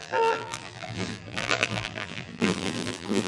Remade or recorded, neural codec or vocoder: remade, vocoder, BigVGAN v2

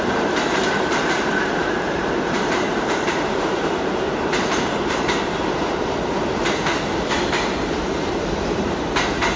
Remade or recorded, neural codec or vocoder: remade, vocoder, BigVGAN v2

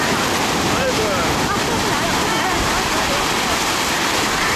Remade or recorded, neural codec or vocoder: remade, vocoder, BigVGAN v2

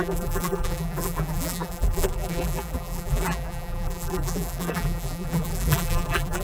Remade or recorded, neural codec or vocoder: remade, vocoder, BigVGAN v2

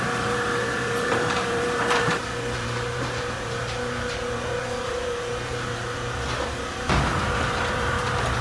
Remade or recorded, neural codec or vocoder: remade, vocoder, BigVGAN v2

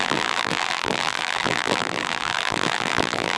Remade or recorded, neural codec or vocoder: remade, vocoder, BigVGAN v2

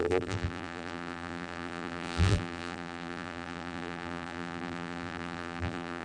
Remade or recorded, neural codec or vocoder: remade, vocoder, BigVGAN v2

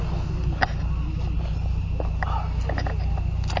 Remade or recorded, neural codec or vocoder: recorded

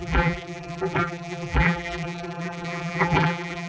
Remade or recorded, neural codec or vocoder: remade, vocoder, BigVGAN v2